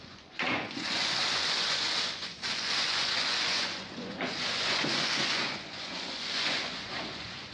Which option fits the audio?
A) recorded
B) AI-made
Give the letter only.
B